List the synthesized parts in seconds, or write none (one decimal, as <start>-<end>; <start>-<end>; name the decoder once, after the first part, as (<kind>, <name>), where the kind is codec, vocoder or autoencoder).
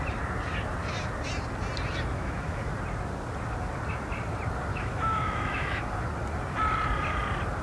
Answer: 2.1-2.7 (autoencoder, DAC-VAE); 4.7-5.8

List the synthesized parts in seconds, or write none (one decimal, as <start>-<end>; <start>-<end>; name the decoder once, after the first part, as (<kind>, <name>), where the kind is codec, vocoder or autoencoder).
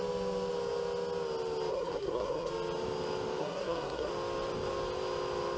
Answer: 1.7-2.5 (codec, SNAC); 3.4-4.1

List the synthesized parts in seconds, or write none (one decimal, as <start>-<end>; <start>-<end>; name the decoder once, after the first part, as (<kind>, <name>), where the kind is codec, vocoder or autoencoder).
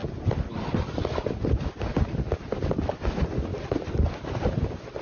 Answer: none